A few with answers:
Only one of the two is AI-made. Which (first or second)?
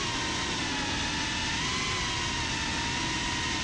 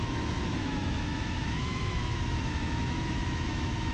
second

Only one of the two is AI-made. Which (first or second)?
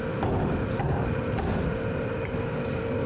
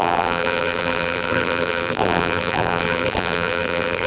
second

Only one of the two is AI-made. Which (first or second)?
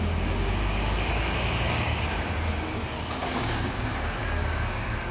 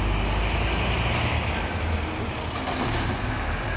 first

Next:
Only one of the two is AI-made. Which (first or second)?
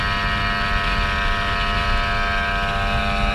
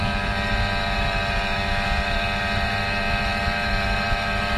second